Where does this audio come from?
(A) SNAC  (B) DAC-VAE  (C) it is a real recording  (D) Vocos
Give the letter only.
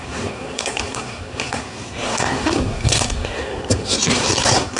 A